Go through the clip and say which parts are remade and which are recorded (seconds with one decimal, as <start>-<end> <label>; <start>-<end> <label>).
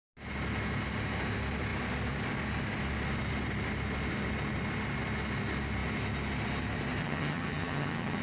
0.0-7.0 recorded; 7.0-8.2 remade